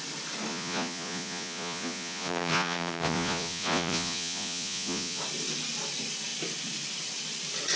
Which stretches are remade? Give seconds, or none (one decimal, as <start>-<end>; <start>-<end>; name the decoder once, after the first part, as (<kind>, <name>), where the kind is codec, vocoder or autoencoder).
0.5-5.2 (vocoder, Vocos)